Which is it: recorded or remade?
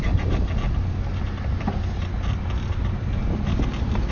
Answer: recorded